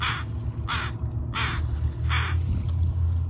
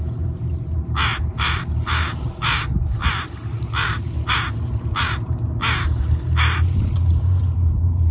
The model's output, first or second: second